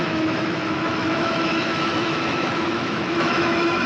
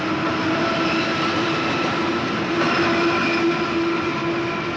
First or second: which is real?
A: second